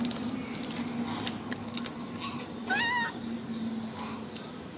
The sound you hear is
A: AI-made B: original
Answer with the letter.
B